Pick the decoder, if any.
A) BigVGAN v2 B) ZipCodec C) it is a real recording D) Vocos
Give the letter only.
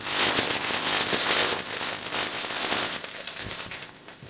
B